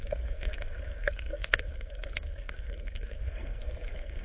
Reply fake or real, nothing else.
fake